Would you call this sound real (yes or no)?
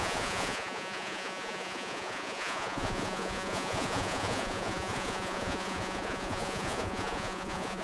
no